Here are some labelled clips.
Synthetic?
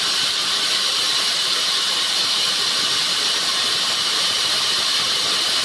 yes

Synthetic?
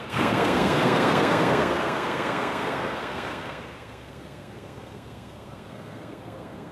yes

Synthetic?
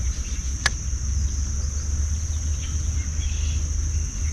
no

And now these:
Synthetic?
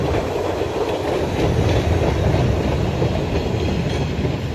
yes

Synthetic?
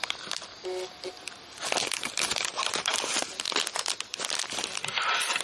no